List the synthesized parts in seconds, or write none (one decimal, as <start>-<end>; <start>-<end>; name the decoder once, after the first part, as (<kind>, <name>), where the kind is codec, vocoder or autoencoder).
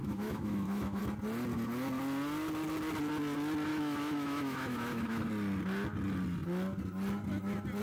0.0-1.0 (autoencoder, DAC-VAE); 3.7-5.3